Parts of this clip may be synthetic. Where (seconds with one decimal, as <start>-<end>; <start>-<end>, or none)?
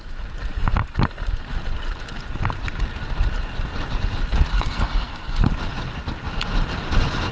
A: 4.5-5.4